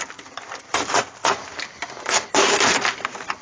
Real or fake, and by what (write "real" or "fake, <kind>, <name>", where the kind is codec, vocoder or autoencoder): real